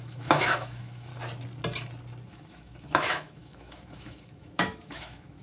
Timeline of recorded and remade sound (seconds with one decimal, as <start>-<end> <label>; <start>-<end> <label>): 0.0-1.1 remade; 1.1-2.3 recorded; 2.3-5.4 remade